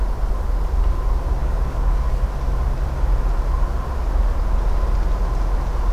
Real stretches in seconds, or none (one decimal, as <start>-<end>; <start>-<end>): 0.0-1.4; 2.2-5.9